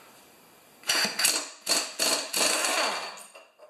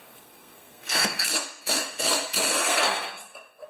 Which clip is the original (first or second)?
first